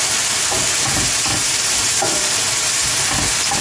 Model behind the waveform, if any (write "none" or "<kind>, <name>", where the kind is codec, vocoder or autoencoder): vocoder, BigVGAN v2